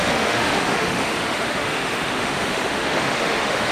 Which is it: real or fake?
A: fake